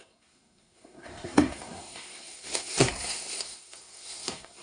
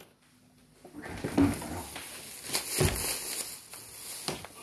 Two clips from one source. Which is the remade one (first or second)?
first